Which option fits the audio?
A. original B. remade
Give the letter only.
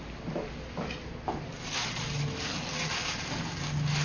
A